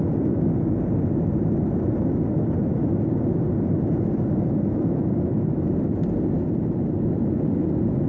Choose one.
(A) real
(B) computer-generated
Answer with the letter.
A